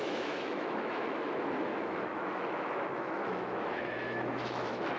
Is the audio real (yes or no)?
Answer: no